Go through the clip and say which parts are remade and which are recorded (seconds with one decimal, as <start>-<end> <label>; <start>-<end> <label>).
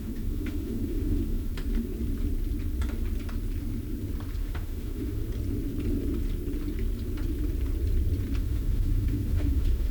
0.0-1.5 remade; 1.5-4.4 recorded; 4.4-5.2 remade; 5.2-8.4 recorded; 8.4-9.9 remade